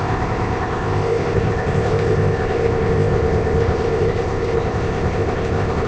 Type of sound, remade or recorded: remade